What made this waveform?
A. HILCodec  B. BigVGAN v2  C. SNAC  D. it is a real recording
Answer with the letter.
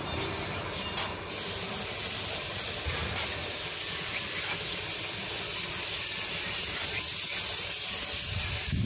D